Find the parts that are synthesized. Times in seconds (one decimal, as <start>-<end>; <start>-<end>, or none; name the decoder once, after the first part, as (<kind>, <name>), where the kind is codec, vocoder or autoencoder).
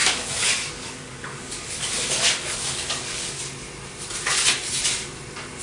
0.0-3.4 (codec, DAC)